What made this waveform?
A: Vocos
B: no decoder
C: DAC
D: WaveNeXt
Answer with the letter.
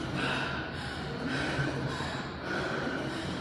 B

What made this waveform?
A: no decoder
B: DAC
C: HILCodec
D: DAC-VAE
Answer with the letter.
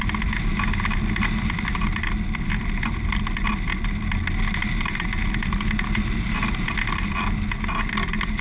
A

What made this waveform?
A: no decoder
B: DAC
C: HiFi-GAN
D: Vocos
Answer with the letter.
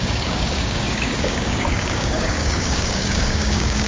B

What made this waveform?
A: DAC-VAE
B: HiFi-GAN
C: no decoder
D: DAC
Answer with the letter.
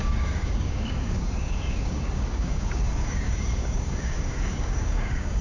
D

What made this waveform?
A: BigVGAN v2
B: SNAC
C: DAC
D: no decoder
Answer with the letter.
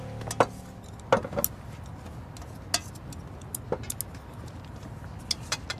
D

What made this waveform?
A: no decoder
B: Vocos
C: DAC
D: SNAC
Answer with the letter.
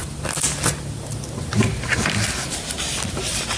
A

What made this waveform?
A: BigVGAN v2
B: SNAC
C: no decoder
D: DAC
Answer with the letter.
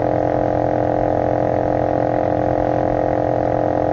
C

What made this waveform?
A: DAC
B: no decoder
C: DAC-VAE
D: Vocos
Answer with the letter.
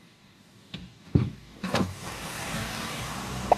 A